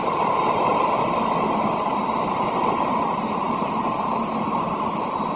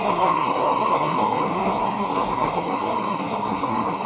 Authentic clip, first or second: first